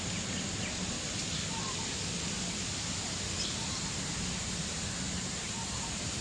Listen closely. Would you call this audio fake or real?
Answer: real